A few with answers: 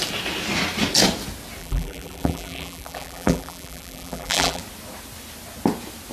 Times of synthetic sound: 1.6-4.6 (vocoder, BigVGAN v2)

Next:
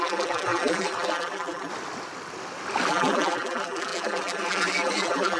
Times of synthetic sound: 0.0-1.7 (vocoder, BigVGAN v2); 2.9-5.4

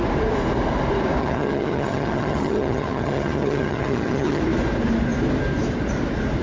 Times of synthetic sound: 1.2-4.4 (vocoder, HiFi-GAN)

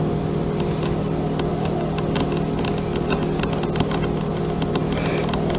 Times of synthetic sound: none

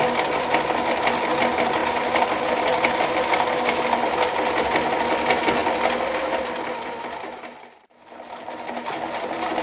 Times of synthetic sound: none